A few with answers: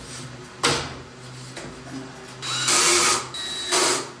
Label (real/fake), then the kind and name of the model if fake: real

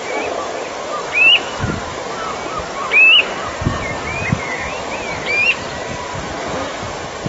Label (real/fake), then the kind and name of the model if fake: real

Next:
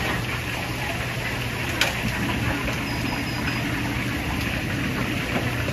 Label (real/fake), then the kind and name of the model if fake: real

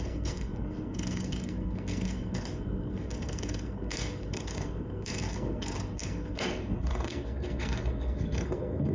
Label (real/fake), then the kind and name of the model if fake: fake, codec, SNAC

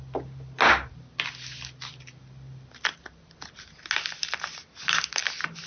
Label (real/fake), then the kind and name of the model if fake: real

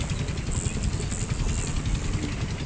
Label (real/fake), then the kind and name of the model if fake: real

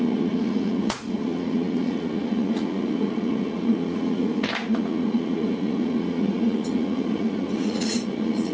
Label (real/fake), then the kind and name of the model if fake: fake, vocoder, Vocos